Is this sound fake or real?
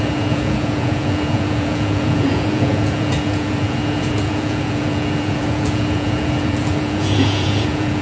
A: fake